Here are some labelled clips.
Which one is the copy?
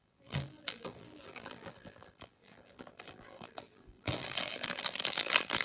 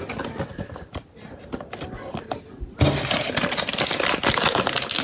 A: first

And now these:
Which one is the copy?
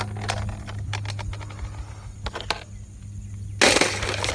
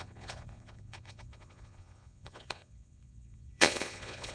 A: second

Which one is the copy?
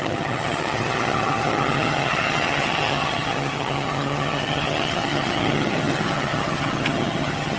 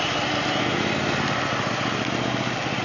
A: first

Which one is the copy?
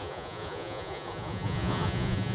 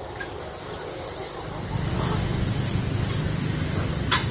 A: first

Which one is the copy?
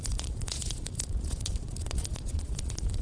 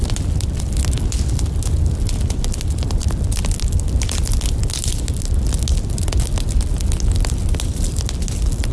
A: first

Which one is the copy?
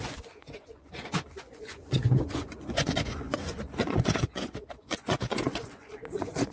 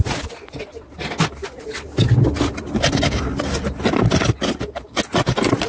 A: first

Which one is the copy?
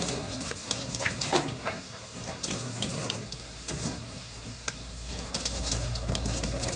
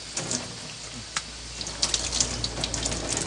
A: first